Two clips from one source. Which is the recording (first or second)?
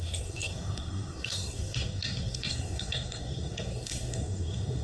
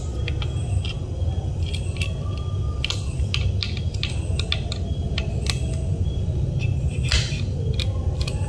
second